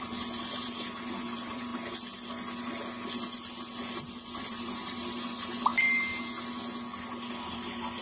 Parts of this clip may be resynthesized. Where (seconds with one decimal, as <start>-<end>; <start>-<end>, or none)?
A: 0.0-1.7; 4.4-5.7; 7.3-8.0